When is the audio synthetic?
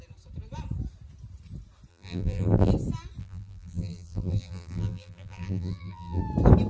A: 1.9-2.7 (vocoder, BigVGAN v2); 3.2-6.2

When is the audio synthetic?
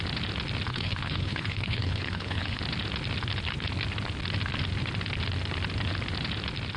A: 0.7-2.6 (codec, HILCodec)